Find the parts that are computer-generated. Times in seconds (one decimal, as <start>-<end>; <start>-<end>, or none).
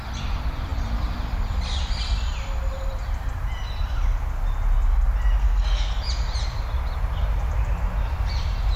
5.4-5.9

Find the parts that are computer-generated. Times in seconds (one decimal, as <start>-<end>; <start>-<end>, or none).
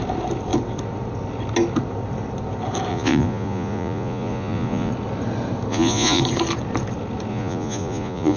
2.9-4.9; 5.7-6.2; 7.3-8.4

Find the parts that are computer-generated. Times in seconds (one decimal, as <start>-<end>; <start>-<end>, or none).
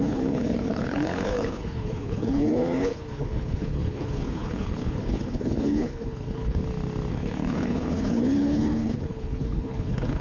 0.0-6.6; 7.1-10.2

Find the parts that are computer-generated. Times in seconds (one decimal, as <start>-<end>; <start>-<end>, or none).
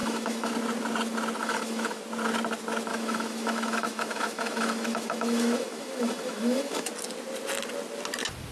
0.0-0.5; 1.4-2.0; 2.9-6.9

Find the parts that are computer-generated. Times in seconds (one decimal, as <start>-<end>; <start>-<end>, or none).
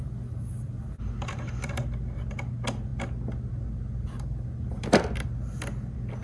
none